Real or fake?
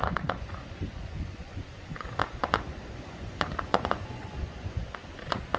fake